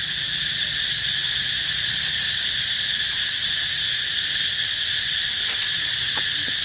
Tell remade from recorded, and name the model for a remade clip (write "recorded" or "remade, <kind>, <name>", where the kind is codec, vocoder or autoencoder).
recorded